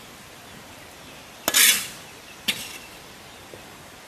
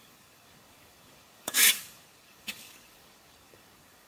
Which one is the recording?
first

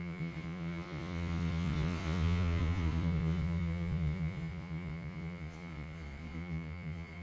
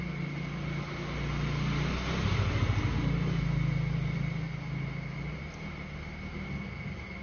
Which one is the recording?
second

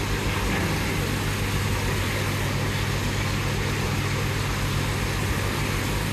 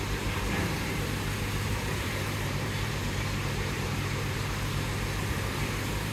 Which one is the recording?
first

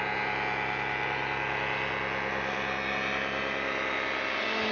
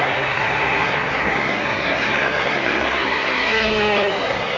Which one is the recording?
first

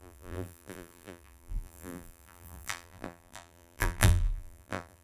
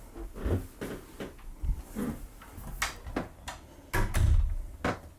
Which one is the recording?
second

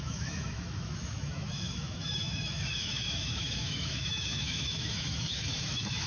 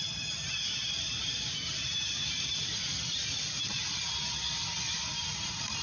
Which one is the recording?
second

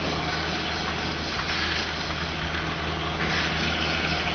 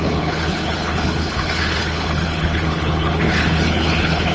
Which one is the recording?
first